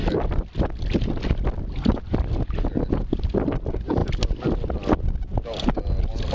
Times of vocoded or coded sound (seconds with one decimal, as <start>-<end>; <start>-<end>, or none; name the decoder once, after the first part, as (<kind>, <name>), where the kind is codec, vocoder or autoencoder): none

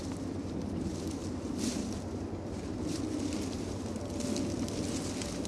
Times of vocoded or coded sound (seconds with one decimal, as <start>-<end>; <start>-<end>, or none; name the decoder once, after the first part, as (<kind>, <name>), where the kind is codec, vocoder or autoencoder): 1.2-4.2 (vocoder, BigVGAN v2)